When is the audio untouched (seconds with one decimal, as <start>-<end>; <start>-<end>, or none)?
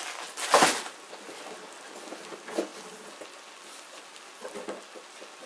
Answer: 0.0-5.5